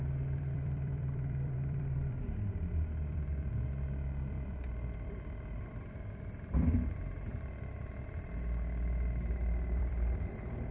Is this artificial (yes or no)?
yes